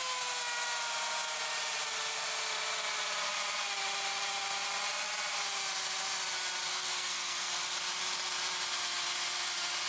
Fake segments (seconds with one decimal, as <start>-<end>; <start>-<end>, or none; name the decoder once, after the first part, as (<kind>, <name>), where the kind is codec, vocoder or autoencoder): 6.7-7.5 (codec, SNAC)